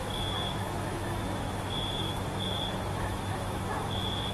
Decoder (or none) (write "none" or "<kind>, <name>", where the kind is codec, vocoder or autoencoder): autoencoder, DAC-VAE